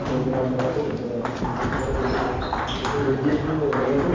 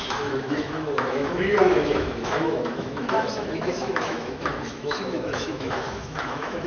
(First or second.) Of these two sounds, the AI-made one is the second